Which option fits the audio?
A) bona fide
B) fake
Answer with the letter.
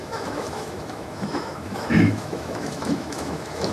B